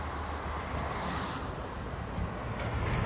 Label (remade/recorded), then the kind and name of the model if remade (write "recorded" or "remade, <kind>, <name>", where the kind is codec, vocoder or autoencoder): recorded